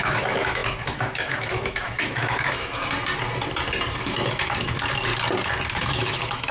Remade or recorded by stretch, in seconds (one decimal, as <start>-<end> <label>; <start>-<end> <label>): 0.0-2.8 remade; 2.8-4.0 recorded; 4.0-5.1 remade; 5.1-5.7 recorded; 5.7-6.5 remade

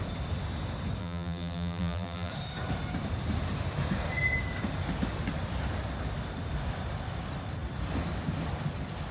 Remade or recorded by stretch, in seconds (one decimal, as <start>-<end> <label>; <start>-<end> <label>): 0.0-1.0 recorded; 1.0-2.3 remade; 2.3-9.1 recorded